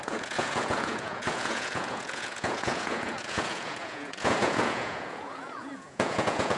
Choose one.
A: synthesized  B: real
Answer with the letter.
A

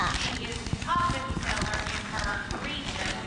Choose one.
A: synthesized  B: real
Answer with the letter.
B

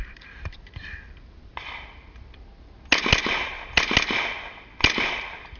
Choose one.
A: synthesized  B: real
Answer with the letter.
B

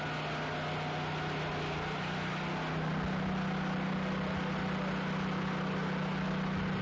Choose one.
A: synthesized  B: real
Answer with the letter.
B